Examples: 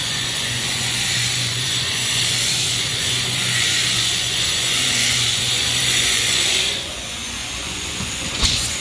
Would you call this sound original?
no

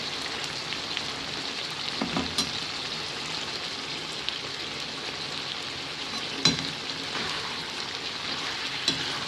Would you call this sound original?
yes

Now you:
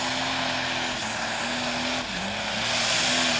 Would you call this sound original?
yes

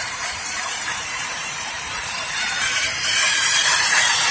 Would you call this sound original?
no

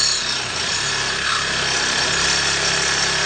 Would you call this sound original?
yes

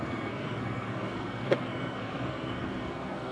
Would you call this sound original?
no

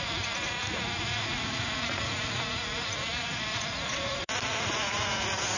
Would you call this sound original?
no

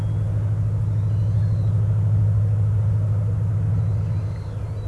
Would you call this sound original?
yes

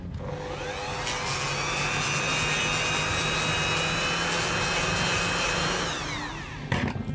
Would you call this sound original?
yes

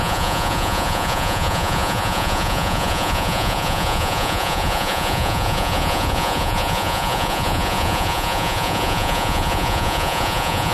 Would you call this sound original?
no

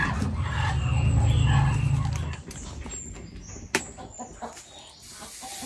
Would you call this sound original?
yes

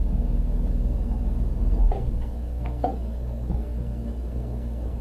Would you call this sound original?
no